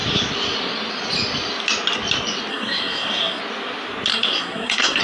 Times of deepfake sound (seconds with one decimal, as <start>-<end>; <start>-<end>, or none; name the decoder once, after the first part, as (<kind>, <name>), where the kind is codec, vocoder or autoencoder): 2.5-3.4 (codec, SNAC); 4.1-5.0